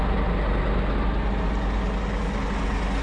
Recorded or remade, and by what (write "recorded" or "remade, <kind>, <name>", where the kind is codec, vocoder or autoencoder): recorded